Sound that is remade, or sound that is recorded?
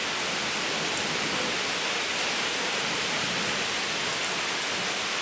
recorded